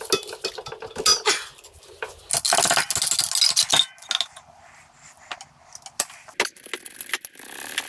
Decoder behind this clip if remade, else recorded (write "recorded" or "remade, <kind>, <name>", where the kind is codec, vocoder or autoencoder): recorded